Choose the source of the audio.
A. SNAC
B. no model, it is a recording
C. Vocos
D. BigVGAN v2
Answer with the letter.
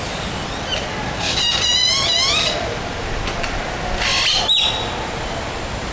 B